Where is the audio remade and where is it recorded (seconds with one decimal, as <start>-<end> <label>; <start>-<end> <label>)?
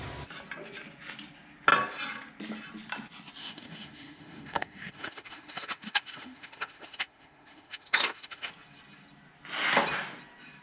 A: 0.0-3.4 recorded; 3.4-8.5 remade; 8.5-10.6 recorded